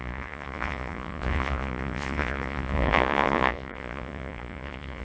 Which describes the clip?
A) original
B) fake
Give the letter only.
B